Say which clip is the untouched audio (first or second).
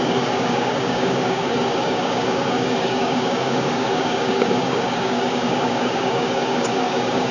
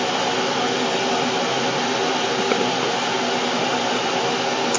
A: second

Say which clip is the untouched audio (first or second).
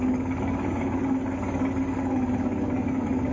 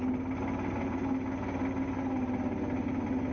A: second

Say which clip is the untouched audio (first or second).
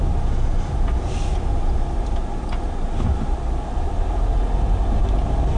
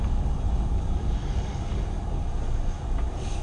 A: first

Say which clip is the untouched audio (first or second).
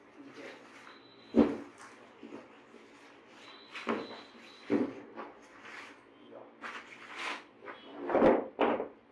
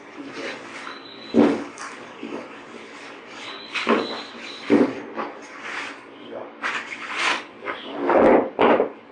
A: first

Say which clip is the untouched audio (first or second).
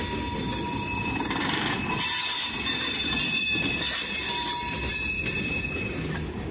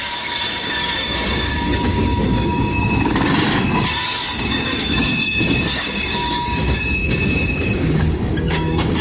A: first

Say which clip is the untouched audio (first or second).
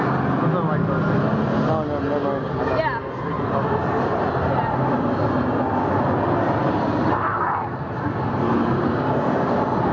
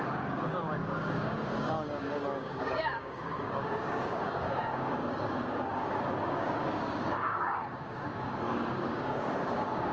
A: first